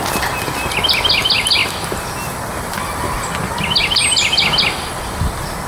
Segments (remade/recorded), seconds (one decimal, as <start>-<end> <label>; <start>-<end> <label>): 0.0-5.7 recorded

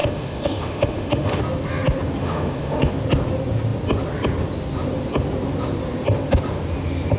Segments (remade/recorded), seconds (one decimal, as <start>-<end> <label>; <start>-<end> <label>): 0.0-1.4 remade; 1.4-2.2 recorded; 2.2-2.9 remade; 2.9-7.2 recorded

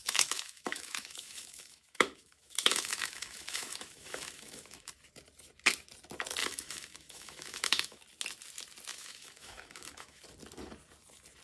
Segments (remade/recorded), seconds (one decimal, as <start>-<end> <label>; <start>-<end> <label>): 0.0-4.9 remade; 4.9-6.4 recorded; 6.4-8.0 remade; 8.0-8.9 recorded; 8.9-10.2 remade; 10.2-11.4 recorded